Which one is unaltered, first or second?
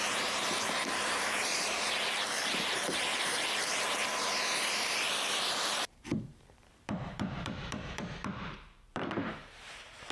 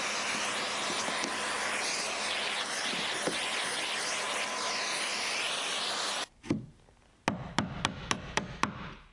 second